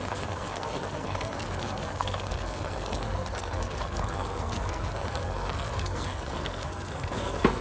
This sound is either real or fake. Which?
fake